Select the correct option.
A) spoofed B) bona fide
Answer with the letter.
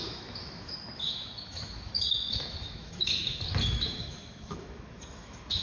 A